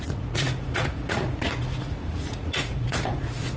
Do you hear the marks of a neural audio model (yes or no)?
yes